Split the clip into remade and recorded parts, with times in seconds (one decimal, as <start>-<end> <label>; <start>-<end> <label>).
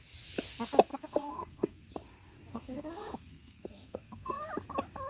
0.0-0.9 recorded; 0.9-1.8 remade; 1.8-2.5 recorded; 2.5-4.5 remade; 4.5-5.1 recorded